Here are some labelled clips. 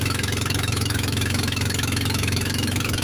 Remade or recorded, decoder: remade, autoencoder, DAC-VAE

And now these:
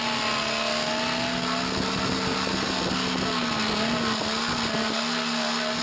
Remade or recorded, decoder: recorded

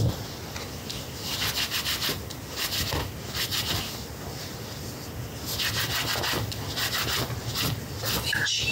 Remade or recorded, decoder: recorded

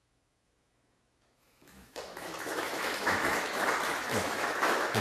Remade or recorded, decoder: remade, autoencoder, DAC-VAE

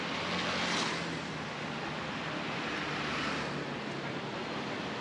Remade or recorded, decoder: recorded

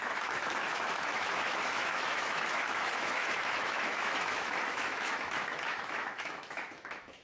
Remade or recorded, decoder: remade, autoencoder, DAC-VAE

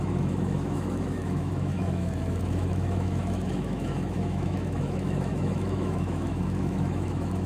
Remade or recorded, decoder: remade, autoencoder, DAC-VAE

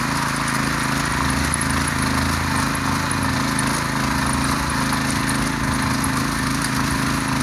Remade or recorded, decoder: recorded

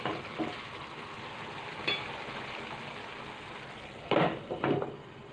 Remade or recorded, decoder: recorded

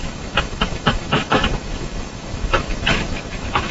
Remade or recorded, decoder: remade, autoencoder, DAC-VAE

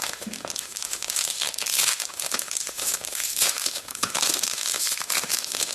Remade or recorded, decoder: remade, autoencoder, DAC-VAE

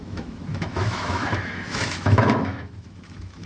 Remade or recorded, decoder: remade, autoencoder, DAC-VAE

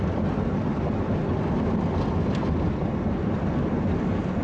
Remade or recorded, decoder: recorded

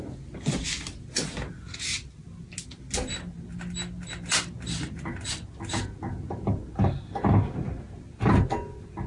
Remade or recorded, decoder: recorded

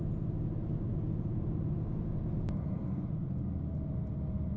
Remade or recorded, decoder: recorded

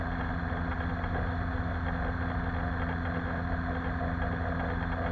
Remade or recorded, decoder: recorded